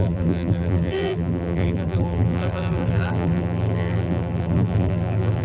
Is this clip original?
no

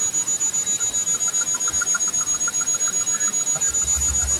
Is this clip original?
yes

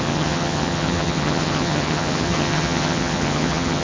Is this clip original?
no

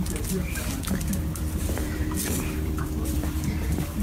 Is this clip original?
no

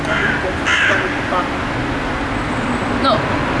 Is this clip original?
yes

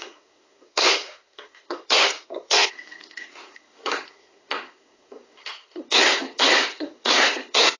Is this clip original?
no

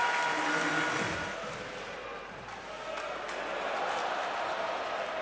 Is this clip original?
yes